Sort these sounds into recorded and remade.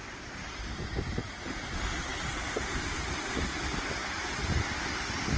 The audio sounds recorded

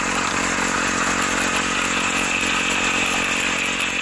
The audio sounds recorded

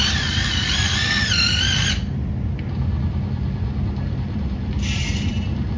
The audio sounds recorded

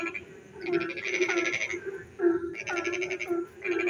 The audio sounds recorded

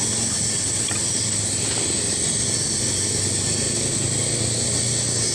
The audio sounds recorded